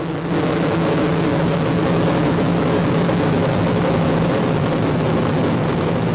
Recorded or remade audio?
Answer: remade